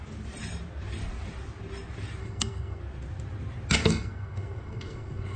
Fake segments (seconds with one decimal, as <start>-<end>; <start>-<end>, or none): 2.2-2.8; 3.8-5.4